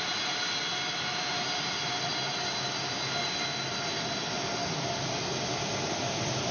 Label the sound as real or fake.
fake